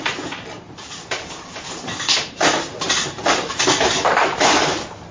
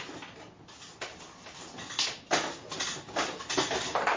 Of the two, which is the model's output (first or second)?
first